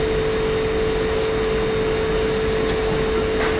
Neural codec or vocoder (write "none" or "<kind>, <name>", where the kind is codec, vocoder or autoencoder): none